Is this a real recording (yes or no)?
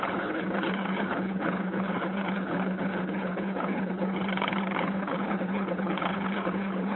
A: no